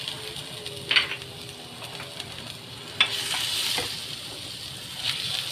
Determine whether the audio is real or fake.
real